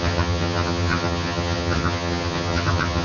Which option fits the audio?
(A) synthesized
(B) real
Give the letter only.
A